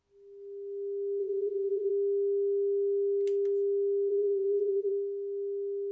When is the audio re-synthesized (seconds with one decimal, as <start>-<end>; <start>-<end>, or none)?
1.2-1.9; 4.1-4.9